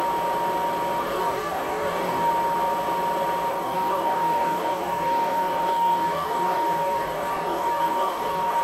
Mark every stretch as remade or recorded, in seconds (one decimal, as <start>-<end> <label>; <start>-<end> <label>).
0.0-1.0 recorded; 1.0-2.3 remade; 2.3-3.5 recorded; 3.5-8.6 remade